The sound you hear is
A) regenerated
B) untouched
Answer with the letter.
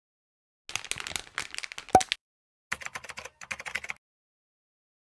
B